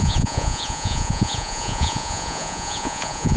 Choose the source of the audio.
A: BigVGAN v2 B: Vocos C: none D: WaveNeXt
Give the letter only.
B